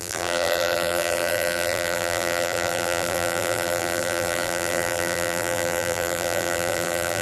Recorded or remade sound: remade